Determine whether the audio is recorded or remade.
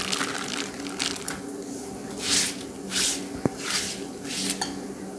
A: recorded